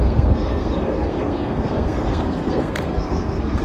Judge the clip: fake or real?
fake